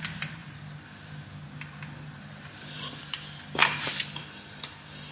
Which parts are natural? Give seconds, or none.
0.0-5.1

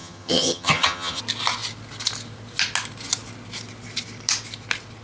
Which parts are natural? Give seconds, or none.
1.2-5.0

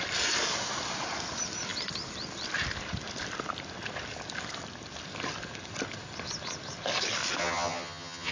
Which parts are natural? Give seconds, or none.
0.0-7.4

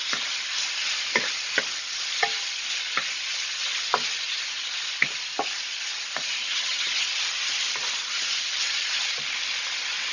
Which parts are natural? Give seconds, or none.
0.0-6.4; 7.0-10.1